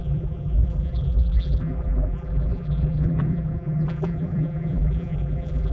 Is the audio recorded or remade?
remade